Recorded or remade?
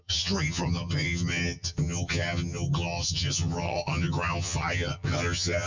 remade